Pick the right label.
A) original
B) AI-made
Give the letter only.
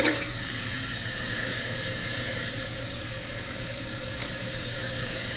B